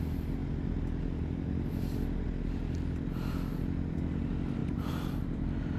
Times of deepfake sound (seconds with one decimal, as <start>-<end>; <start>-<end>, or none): 4.6-5.8